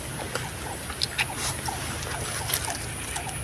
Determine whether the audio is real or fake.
real